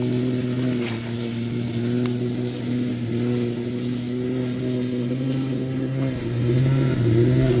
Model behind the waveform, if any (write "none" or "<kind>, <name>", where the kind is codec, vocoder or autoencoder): none